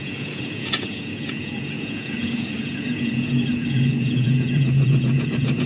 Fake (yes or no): yes